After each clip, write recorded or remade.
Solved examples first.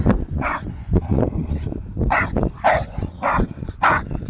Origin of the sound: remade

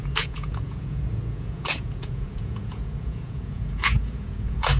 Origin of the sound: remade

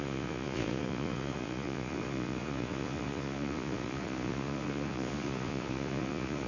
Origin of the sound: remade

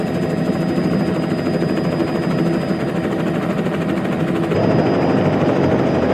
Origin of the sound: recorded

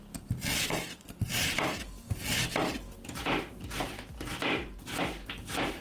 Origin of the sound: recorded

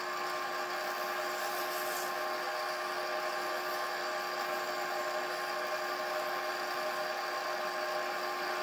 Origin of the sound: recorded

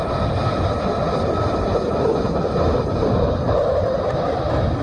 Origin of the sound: recorded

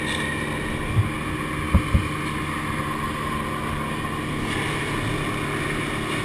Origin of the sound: recorded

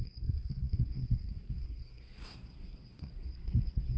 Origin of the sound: remade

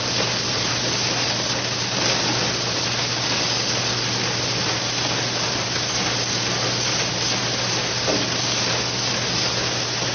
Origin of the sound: recorded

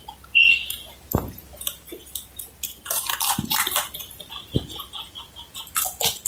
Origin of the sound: recorded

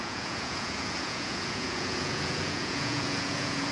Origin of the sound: remade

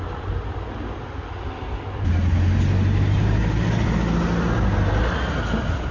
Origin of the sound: recorded